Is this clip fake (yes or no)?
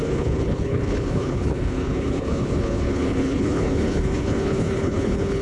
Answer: yes